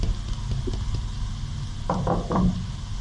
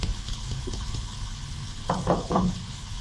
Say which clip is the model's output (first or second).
second